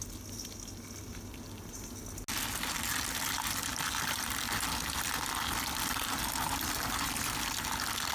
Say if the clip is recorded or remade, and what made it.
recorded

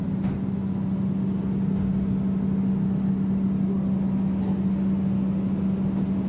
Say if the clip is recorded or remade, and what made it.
recorded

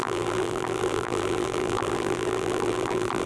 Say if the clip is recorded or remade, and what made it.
remade, vocoder, BigVGAN v2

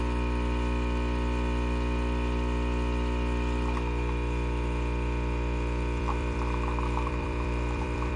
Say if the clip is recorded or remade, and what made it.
remade, vocoder, BigVGAN v2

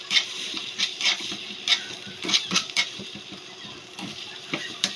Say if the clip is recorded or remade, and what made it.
remade, vocoder, BigVGAN v2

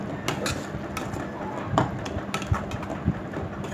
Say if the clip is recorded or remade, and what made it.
recorded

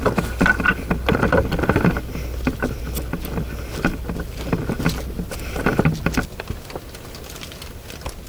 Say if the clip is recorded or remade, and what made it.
recorded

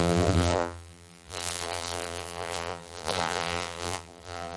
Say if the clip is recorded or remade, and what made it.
remade, vocoder, BigVGAN v2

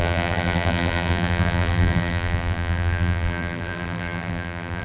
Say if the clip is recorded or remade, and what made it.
remade, vocoder, BigVGAN v2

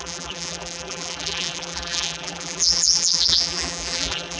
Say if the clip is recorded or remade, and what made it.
remade, vocoder, BigVGAN v2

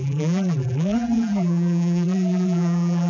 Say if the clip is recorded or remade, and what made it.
remade, vocoder, BigVGAN v2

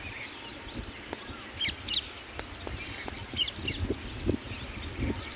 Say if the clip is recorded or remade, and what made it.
recorded